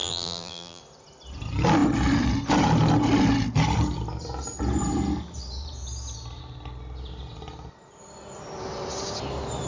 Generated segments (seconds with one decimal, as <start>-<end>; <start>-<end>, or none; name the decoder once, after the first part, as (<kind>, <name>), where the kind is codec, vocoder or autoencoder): 0.0-0.8 (vocoder, BigVGAN v2)